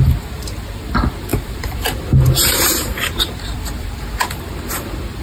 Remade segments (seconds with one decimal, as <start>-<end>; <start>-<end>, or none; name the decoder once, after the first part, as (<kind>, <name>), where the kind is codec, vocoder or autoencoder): 1.3-4.4 (vocoder, BigVGAN v2)

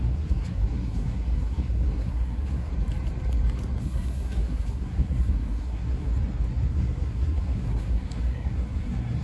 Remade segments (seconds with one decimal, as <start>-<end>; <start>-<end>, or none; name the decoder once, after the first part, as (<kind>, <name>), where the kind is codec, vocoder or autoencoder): 0.0-2.7 (codec, SNAC); 3.8-6.1; 6.7-9.2

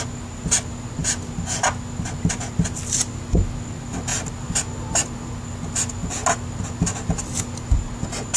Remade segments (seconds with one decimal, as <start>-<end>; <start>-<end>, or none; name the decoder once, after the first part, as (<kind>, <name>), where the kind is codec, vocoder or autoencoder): none

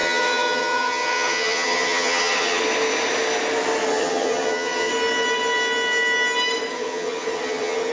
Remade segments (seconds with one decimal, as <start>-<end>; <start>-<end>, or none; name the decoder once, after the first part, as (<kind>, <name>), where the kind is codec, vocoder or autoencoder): 0.0-2.6 (vocoder, HiFi-GAN); 3.9-4.9; 6.7-7.9

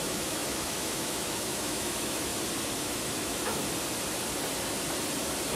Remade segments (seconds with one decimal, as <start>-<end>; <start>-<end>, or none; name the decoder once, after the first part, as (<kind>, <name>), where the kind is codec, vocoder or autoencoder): 0.0-2.3 (autoencoder, DAC-VAE); 2.8-3.6

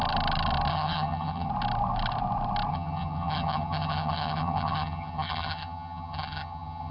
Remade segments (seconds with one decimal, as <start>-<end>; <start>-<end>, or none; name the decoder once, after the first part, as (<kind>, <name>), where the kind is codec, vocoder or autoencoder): 0.7-1.5 (vocoder, HiFi-GAN); 2.7-6.9

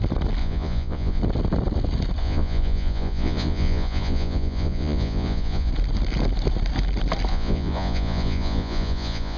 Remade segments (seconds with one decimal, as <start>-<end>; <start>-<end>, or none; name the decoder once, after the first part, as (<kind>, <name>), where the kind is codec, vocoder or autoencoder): 0.4-1.2 (vocoder, Vocos); 2.2-5.7; 7.3-9.4

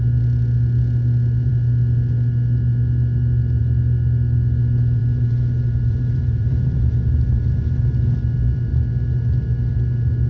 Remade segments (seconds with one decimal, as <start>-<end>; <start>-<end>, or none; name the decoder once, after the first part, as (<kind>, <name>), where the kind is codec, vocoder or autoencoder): 5.0-7.8 (vocoder, BigVGAN v2)